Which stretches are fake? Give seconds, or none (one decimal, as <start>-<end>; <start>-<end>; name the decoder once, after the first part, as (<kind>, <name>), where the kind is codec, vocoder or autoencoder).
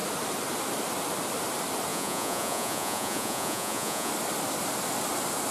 1.9-4.1 (vocoder, Vocos)